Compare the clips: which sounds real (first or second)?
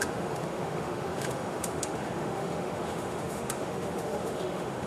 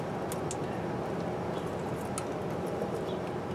second